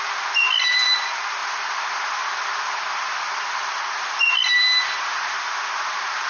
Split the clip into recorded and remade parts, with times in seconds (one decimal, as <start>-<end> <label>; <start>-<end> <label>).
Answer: 0.0-6.3 recorded